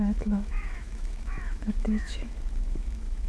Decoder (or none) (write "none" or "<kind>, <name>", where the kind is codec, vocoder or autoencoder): autoencoder, DAC-VAE